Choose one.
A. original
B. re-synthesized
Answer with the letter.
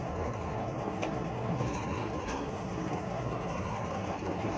B